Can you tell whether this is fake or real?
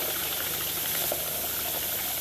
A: real